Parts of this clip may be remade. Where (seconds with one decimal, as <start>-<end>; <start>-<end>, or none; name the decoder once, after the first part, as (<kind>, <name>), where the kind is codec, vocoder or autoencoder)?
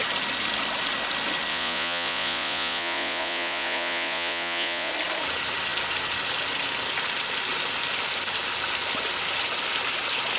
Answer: 1.5-4.9 (vocoder, Vocos)